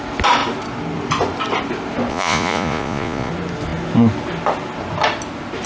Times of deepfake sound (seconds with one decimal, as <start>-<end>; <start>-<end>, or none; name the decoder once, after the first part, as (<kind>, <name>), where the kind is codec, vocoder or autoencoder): 2.1-3.3 (vocoder, Vocos)